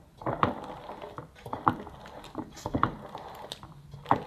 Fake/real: real